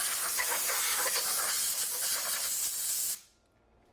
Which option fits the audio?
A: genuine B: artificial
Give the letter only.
A